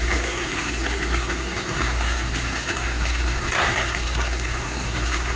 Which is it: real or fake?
fake